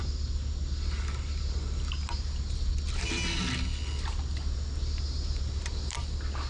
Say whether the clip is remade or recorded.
recorded